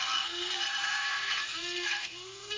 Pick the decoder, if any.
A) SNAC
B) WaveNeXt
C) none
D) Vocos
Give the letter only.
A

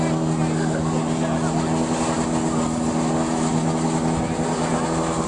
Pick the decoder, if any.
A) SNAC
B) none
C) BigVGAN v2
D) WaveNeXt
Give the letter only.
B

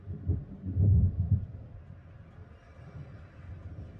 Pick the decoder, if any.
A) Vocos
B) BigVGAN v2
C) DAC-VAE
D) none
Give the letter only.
D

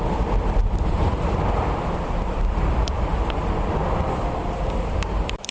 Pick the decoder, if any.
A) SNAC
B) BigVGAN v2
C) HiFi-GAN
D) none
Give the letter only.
D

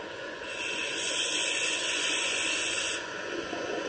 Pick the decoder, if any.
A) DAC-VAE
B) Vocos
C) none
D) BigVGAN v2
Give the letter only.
B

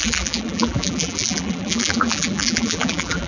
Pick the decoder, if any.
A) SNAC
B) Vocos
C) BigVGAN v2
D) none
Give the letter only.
C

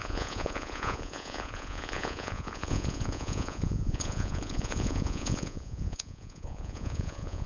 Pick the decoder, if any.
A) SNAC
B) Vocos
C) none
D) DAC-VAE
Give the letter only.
B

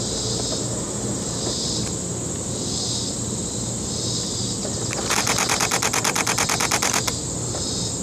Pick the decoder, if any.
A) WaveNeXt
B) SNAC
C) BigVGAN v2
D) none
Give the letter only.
D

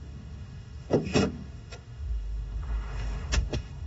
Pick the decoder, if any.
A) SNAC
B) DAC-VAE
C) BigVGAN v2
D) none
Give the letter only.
B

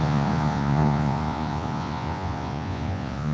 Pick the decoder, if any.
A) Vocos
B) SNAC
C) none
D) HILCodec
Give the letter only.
A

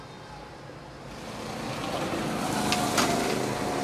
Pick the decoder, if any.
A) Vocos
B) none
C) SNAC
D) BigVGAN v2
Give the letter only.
B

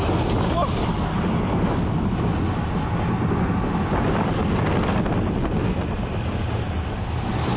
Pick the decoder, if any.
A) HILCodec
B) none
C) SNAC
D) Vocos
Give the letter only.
B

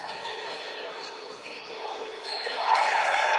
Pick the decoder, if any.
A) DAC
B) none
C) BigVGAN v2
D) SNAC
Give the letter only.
D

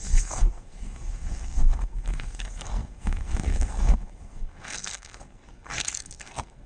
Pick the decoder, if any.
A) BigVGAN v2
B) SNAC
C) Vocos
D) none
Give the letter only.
B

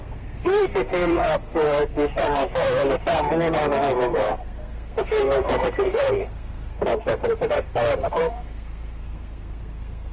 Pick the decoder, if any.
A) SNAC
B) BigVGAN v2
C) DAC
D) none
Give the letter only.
A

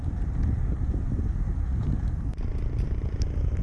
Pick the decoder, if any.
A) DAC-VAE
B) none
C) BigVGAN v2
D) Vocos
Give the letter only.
B